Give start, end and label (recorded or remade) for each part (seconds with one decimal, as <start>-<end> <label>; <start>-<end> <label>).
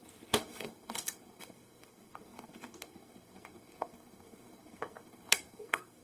0.0-6.0 remade